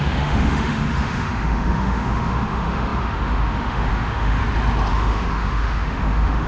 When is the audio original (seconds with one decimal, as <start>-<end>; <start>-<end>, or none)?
4.4-4.9